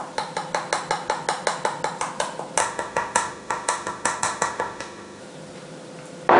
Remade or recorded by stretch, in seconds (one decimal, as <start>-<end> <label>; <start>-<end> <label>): 0.0-2.6 recorded; 2.6-5.2 remade; 5.2-6.4 recorded